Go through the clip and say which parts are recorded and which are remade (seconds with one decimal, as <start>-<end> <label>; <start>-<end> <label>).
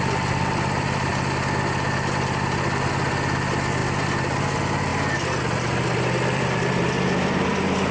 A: 0.0-1.1 remade; 1.1-2.9 recorded; 2.9-4.9 remade; 4.9-5.4 recorded; 5.4-7.9 remade